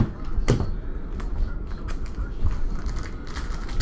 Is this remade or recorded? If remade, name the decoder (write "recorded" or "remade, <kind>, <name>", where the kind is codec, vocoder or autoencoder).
recorded